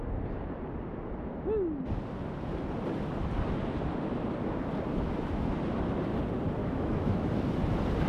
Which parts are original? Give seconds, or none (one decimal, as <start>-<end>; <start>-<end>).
0.0-6.6; 7.3-8.1